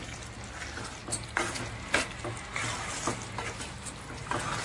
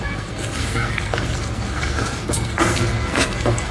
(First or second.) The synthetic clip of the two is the second